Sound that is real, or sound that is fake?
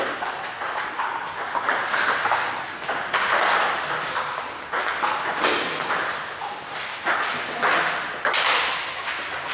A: real